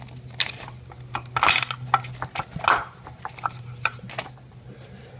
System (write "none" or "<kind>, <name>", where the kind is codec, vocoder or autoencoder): none